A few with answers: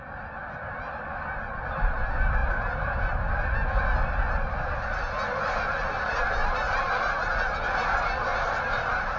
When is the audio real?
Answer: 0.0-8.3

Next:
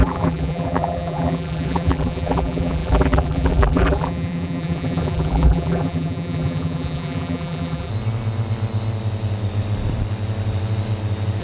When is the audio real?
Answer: 7.9-11.4

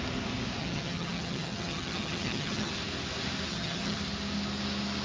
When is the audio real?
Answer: 0.0-0.6; 2.7-3.5; 4.0-5.0

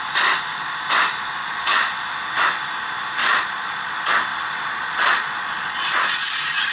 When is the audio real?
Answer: 0.0-1.4; 2.0-3.2; 3.9-4.3

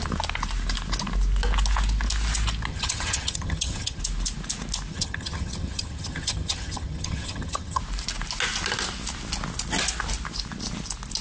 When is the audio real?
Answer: 0.0-2.7; 4.0-4.9; 7.8-11.2